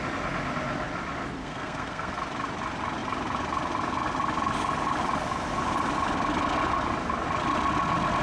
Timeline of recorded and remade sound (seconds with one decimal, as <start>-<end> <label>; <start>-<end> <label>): 0.0-1.4 recorded; 1.4-2.1 remade; 2.1-8.2 recorded